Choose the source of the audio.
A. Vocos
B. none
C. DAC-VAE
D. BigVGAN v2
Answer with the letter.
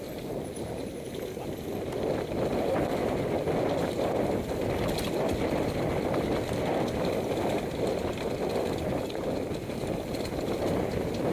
B